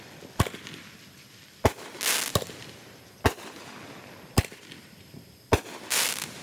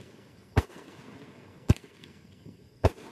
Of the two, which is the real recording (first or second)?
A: first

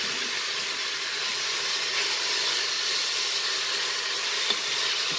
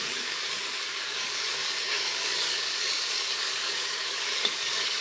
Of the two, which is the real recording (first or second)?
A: first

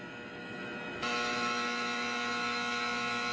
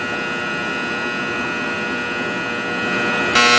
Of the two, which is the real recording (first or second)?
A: second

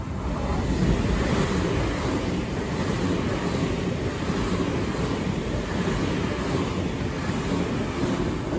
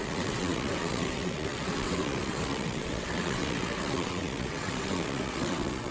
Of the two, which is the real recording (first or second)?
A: first